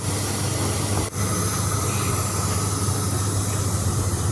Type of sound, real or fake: real